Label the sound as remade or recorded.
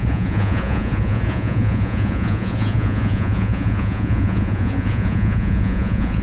remade